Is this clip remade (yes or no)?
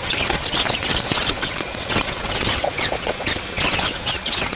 yes